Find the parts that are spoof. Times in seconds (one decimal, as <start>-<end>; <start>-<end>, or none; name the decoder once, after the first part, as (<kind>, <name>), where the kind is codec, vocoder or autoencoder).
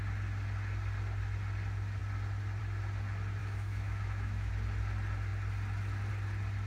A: 3.4-4.5 (autoencoder, DAC-VAE)